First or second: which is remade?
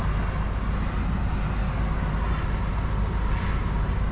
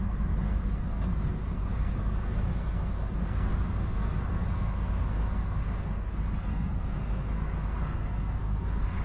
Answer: second